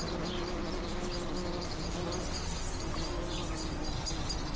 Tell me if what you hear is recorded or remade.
recorded